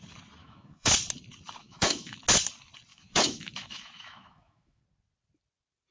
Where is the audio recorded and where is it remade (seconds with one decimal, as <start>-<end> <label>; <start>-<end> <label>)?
0.0-0.4 recorded; 0.4-0.9 remade; 0.9-1.6 recorded; 1.6-2.2 remade; 2.2-2.9 recorded; 2.9-4.8 remade; 4.8-5.9 recorded